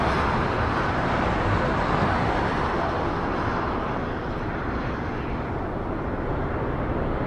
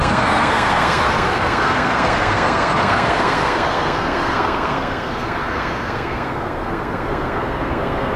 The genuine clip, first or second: first